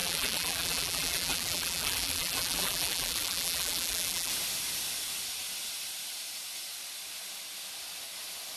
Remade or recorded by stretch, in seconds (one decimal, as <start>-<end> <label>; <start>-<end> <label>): 0.0-4.3 remade; 4.3-8.6 recorded